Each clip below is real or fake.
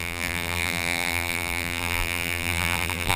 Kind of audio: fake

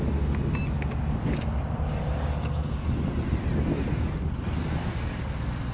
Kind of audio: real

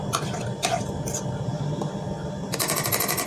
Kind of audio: fake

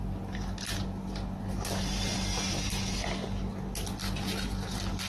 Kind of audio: real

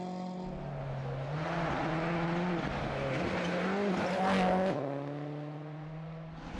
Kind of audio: real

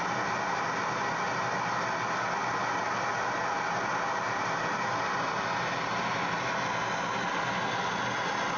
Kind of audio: real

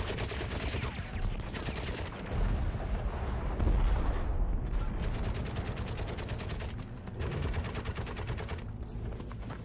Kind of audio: real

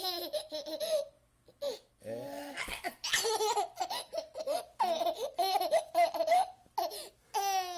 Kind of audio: real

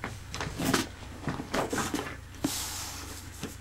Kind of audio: fake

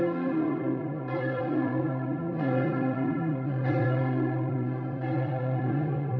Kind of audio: fake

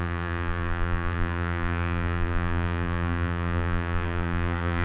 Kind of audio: fake